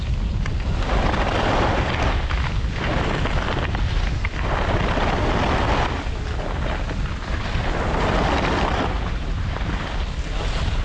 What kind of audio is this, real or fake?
real